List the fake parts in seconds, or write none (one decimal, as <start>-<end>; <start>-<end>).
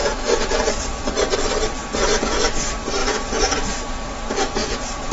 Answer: 0.0-0.8; 1.8-2.4; 3.0-3.7; 4.6-5.1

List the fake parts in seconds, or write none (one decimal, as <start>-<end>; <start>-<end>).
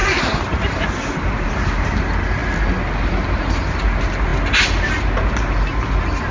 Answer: 0.0-2.0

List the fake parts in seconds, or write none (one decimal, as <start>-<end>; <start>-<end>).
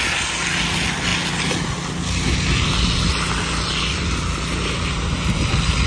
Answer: none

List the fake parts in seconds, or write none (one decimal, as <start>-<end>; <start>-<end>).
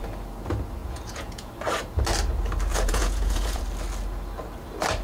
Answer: 0.8-1.5; 2.7-3.6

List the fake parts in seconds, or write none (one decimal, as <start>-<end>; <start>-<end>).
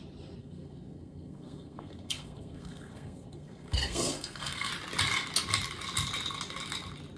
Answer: 0.4-4.7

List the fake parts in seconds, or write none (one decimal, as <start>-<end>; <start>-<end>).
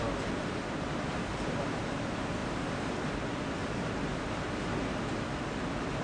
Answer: 1.3-2.0; 2.4-3.0; 3.6-4.4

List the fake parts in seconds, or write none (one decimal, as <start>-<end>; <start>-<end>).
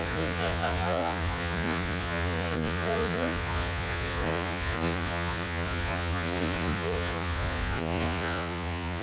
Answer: 0.0-9.0